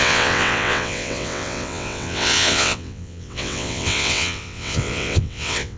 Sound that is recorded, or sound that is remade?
remade